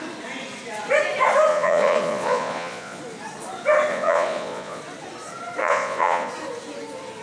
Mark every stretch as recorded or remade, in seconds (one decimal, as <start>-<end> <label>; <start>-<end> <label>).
0.0-1.5 recorded; 1.5-3.0 remade; 3.0-3.9 recorded; 3.9-4.8 remade; 4.8-5.6 recorded; 5.6-6.3 remade; 6.3-7.2 recorded